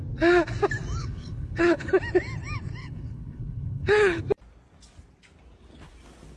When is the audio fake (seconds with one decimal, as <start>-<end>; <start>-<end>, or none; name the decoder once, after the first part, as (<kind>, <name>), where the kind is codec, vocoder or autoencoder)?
1.0-1.9 (codec, HILCodec); 2.8-4.2